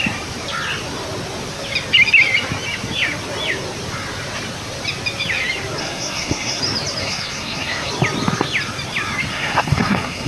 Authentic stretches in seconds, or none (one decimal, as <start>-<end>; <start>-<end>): 0.0-5.8; 6.6-7.0; 7.9-9.3